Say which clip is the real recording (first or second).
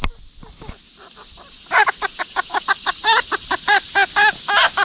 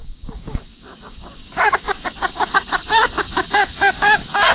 first